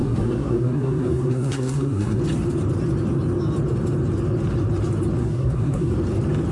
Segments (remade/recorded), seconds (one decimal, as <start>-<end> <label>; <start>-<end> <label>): 0.0-2.2 remade; 2.2-5.2 recorded; 5.2-5.9 remade; 5.9-6.5 recorded